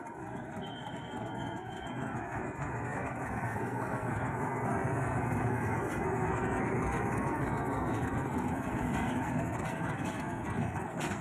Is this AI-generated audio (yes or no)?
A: yes